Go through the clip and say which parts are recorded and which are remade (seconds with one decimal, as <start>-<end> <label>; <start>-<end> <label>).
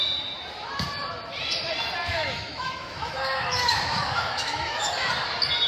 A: 0.0-2.1 recorded; 2.1-5.1 remade; 5.1-5.7 recorded